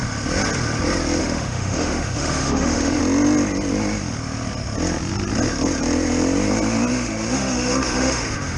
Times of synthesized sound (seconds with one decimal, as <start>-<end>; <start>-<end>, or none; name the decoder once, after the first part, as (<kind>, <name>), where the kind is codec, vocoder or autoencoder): 1.2-3.0 (autoencoder, DAC-VAE); 6.9-8.6